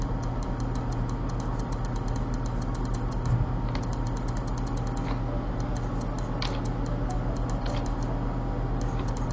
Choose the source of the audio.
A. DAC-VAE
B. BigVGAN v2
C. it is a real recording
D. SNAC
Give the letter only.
C